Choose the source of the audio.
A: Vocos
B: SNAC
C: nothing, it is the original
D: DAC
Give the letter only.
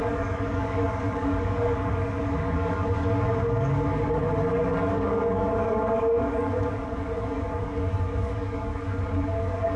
D